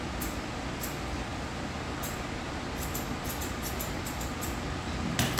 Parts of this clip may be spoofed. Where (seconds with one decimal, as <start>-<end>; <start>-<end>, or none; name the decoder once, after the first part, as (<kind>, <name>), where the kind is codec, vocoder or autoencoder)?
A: none